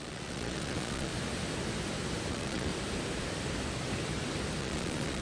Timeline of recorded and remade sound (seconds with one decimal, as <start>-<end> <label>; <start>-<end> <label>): 0.0-1.1 remade; 1.1-2.3 recorded; 2.3-2.7 remade; 2.7-4.6 recorded; 4.6-5.2 remade